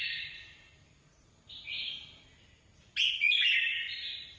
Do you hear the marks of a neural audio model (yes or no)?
no